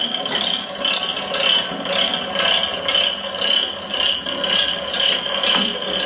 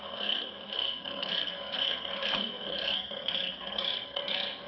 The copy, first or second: second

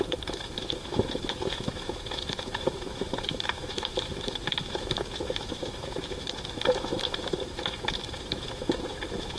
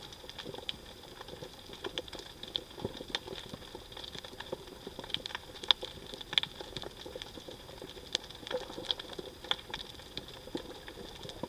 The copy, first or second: first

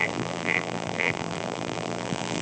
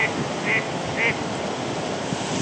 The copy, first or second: first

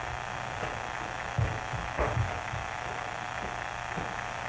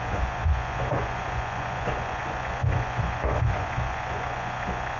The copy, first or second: second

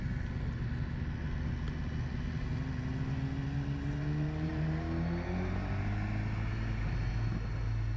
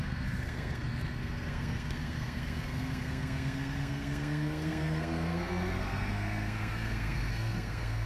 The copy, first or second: second